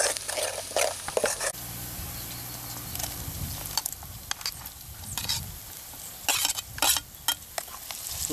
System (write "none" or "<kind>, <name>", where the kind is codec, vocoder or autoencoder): none